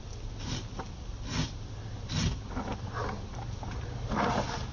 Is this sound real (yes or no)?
yes